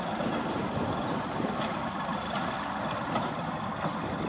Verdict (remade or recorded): recorded